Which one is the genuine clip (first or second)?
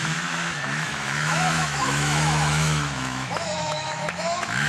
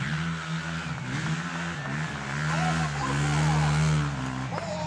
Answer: second